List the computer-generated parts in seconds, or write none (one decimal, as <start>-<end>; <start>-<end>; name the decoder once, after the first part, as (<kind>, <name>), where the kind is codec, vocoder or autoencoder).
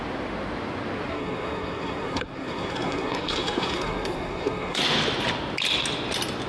1.1-4.8 (codec, SNAC)